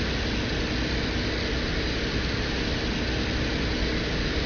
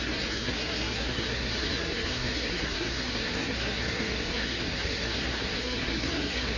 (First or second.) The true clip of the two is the first